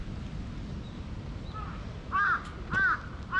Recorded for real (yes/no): yes